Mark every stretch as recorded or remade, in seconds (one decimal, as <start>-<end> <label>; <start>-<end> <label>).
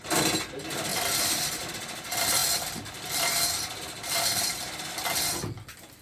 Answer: 0.0-0.9 recorded; 0.9-1.7 remade; 1.7-6.0 recorded